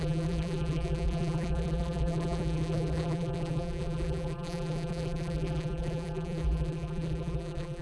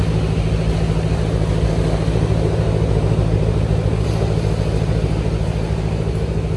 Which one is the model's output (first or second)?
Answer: first